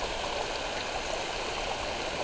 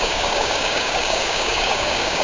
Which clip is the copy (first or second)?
second